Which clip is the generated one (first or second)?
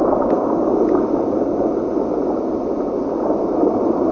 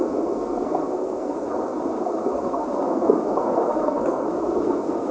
second